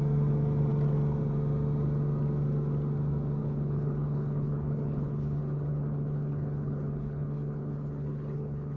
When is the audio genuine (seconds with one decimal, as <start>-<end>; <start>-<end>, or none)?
0.0-3.4